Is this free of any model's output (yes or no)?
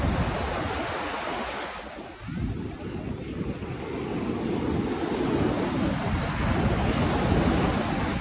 yes